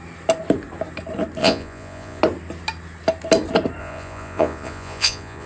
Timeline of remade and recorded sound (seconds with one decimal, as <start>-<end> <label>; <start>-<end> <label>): 0.0-1.4 recorded; 1.4-2.2 remade; 2.2-3.8 recorded; 3.8-5.5 remade